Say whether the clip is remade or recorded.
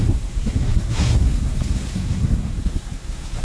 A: remade